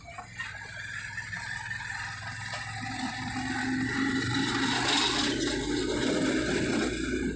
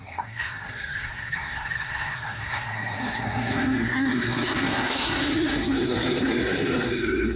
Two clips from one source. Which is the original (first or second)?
first